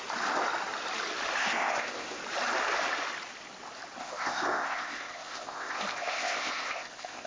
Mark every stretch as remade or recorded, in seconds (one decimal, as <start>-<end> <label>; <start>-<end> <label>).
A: 0.0-1.4 recorded; 1.4-2.2 remade; 2.2-4.0 recorded; 4.0-7.3 remade